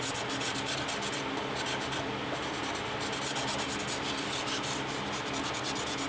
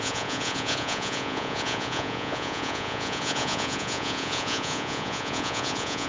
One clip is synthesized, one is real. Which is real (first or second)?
first